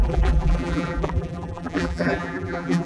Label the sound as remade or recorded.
remade